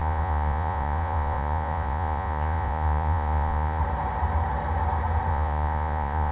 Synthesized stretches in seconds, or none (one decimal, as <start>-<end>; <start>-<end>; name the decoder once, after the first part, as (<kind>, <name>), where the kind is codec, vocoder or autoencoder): 0.0-3.8 (vocoder, Vocos); 5.3-6.3